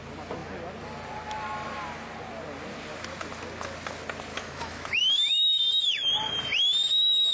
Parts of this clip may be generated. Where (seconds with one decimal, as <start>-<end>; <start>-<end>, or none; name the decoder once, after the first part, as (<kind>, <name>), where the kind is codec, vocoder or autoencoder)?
4.3-5.6 (autoencoder, DAC-VAE)